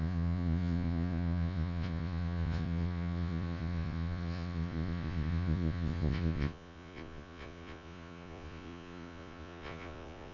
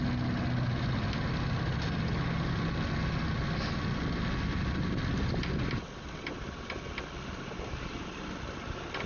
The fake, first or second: first